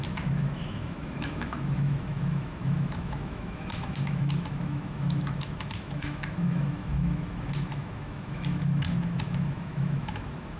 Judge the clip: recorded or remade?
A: remade